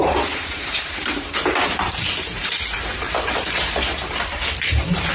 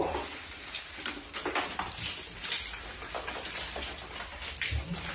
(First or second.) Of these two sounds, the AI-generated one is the first